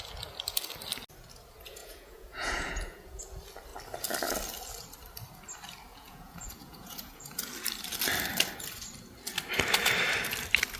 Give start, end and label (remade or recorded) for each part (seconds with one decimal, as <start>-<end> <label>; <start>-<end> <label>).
0.0-1.8 recorded; 1.8-3.2 remade; 3.2-5.9 recorded; 5.9-7.5 remade; 7.5-10.8 recorded